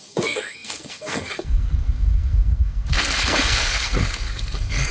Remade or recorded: remade